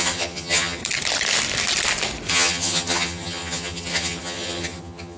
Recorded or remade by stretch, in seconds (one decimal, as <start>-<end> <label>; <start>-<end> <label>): 0.0-0.8 remade; 0.8-2.3 recorded; 2.3-5.2 remade